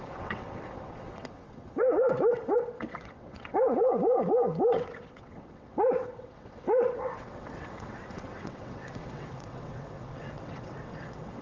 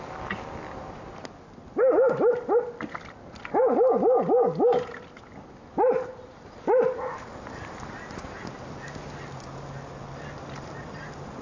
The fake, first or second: first